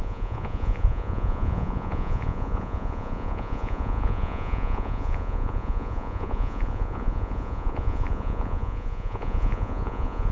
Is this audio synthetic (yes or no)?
yes